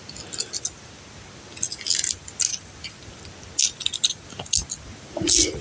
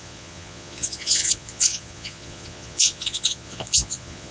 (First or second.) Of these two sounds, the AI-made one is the second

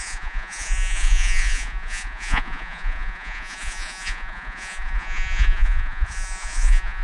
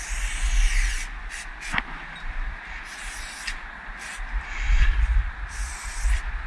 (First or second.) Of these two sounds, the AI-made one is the first